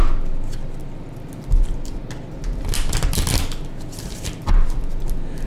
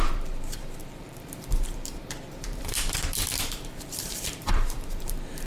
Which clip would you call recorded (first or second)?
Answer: first